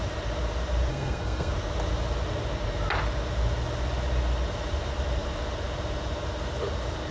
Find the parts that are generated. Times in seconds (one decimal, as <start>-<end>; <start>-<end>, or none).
0.9-1.5